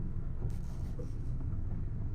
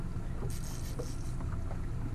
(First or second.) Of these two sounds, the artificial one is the first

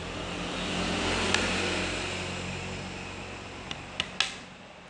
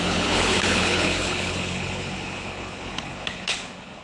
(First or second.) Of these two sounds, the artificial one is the second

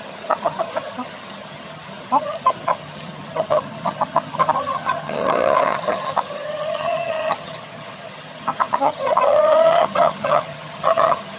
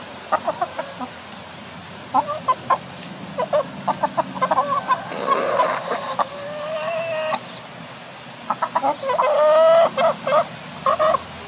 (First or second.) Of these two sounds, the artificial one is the first